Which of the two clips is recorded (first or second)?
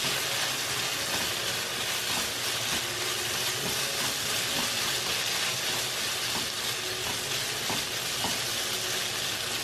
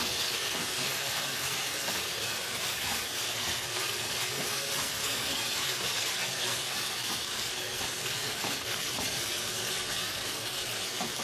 first